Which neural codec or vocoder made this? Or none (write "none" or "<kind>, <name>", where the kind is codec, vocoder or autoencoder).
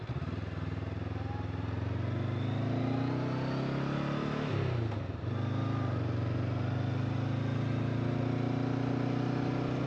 none